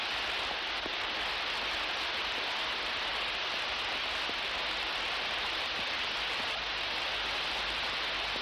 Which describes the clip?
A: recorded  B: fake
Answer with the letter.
A